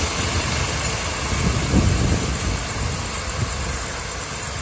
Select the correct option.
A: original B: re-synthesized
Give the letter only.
A